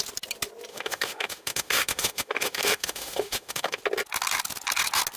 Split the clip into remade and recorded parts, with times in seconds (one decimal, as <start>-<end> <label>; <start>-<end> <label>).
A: 0.0-0.7 recorded; 0.7-3.8 remade; 3.8-5.2 recorded